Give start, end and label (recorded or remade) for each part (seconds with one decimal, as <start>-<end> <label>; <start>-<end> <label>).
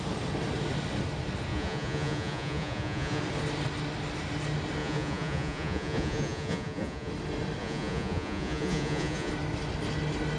0.0-1.5 recorded; 1.5-3.2 remade; 3.2-4.8 recorded; 4.8-7.1 remade; 7.1-7.6 recorded; 7.6-9.3 remade; 9.3-10.4 recorded